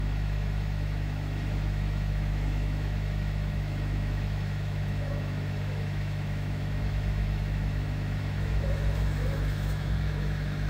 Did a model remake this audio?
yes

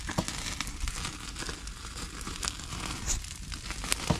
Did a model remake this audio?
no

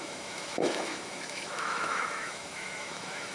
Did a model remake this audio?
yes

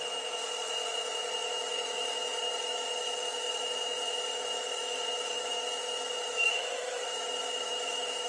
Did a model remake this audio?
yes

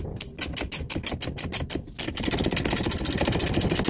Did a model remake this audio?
no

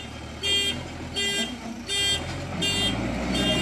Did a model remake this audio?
no